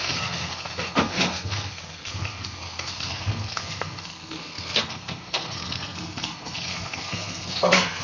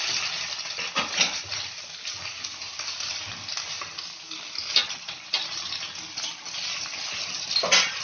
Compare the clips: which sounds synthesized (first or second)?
first